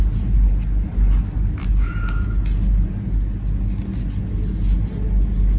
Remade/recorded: recorded